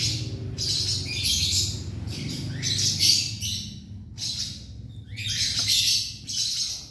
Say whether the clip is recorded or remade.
recorded